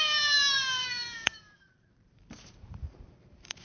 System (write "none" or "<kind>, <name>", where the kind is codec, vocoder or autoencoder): vocoder, BigVGAN v2